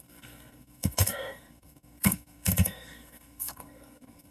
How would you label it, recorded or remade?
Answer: remade